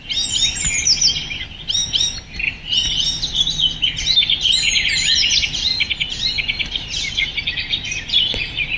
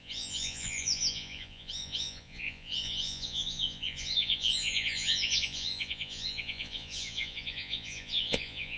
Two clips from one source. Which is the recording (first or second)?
first